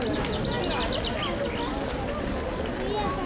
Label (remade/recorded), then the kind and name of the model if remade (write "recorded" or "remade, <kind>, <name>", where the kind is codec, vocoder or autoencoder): recorded